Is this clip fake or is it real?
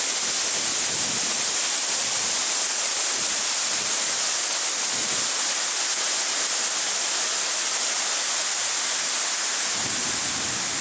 real